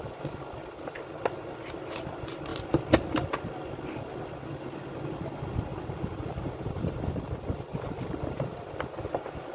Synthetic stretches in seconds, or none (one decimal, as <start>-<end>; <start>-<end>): none